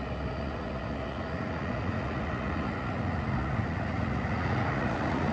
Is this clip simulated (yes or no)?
yes